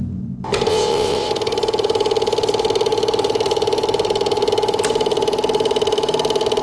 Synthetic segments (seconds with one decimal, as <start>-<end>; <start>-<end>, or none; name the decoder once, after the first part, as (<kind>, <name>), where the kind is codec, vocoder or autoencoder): 0.7-1.3 (vocoder, WaveNeXt)